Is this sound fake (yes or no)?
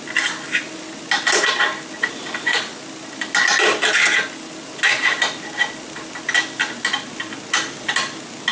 no